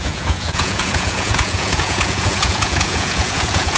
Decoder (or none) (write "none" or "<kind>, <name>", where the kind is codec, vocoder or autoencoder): vocoder, Vocos